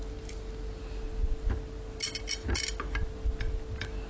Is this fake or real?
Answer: real